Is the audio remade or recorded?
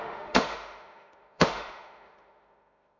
remade